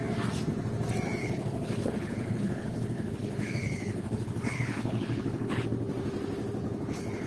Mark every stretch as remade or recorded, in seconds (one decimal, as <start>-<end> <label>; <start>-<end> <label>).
0.0-1.2 recorded; 1.2-5.6 remade; 5.6-6.6 recorded; 6.6-7.3 remade